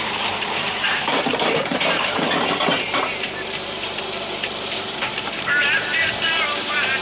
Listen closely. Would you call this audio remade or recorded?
remade